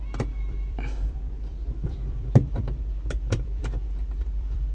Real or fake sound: fake